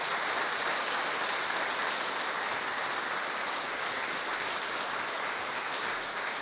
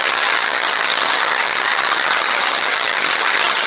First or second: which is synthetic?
second